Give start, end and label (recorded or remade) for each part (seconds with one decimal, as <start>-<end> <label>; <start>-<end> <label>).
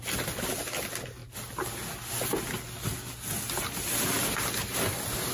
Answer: 0.0-5.3 recorded